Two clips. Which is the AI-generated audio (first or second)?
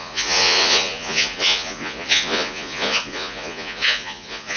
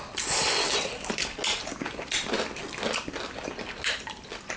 first